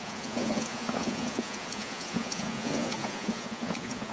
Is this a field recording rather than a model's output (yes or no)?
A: no